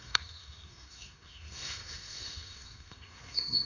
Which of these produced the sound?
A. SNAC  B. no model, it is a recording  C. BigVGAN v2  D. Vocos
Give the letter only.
A